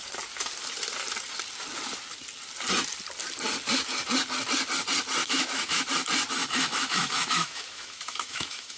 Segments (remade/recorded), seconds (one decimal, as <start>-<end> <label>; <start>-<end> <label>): 0.0-5.2 recorded; 5.2-5.8 remade; 5.8-6.4 recorded; 6.4-8.8 remade